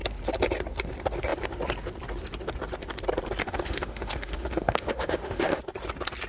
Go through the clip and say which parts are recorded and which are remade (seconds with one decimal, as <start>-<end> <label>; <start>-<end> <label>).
0.0-3.4 recorded; 3.4-5.6 remade; 5.6-6.3 recorded